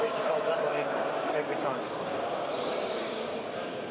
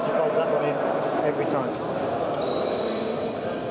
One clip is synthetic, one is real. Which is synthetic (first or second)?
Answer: first